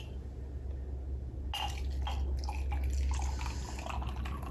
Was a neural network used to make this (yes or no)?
no